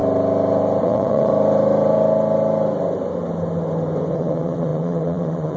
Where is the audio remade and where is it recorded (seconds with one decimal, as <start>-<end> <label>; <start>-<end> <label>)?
0.0-0.8 recorded; 0.8-1.3 remade; 1.3-4.1 recorded; 4.1-5.6 remade